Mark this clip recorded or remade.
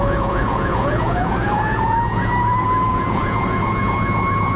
remade